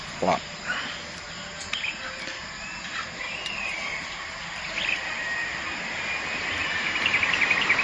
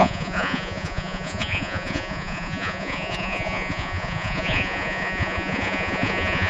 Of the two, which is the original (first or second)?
first